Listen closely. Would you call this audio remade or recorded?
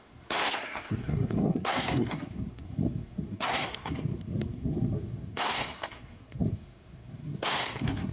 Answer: remade